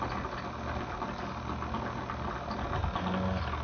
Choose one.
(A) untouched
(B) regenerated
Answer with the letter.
A